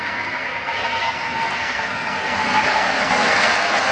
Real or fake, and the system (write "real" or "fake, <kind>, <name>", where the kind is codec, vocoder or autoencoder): fake, codec, SNAC